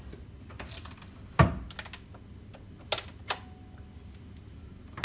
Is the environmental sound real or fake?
real